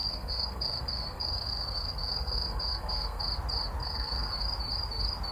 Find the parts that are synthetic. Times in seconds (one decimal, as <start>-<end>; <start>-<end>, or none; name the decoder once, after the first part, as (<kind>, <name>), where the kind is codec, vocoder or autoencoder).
0.0-3.2 (codec, SNAC); 3.8-4.4